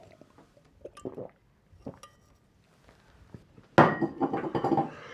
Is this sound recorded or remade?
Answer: recorded